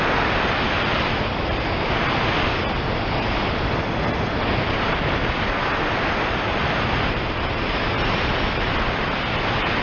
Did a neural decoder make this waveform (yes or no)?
no